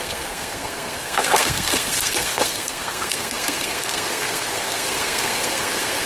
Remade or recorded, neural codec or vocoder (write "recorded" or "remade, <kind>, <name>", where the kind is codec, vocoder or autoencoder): remade, codec, SNAC